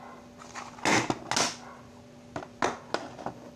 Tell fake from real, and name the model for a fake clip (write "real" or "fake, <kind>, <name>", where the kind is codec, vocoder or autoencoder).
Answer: real